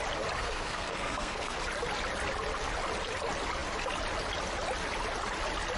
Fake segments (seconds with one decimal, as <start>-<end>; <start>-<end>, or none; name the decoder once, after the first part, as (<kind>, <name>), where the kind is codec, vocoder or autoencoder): 0.4-1.6 (codec, SNAC)